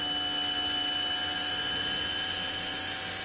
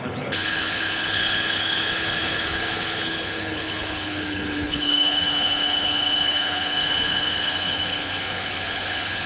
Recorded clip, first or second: first